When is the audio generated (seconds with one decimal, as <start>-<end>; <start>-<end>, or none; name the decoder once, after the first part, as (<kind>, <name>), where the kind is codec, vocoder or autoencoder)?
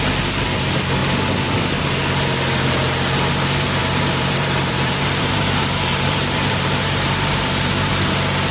3.8-7.9 (vocoder, BigVGAN v2)